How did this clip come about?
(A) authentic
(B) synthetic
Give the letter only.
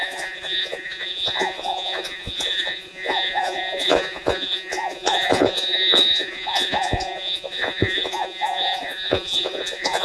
B